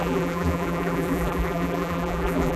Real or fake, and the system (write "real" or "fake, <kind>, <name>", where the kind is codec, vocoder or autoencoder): fake, vocoder, BigVGAN v2